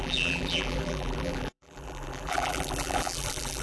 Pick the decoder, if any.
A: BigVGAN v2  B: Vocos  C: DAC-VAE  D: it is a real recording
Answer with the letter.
A